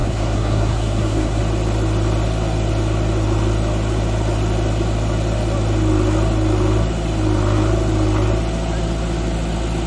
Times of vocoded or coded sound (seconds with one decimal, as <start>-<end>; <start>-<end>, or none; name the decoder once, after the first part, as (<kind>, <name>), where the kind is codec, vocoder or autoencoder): 0.0-1.4 (codec, SNAC)